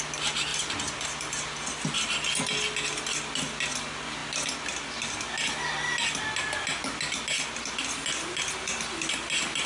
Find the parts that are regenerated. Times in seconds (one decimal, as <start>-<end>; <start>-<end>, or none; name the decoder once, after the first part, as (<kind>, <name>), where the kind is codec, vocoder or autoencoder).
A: none